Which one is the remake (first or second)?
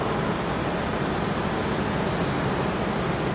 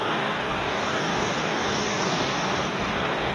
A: second